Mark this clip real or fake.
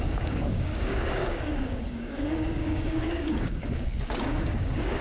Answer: fake